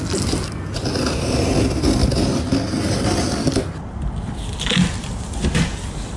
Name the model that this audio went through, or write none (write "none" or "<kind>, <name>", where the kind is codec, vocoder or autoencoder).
none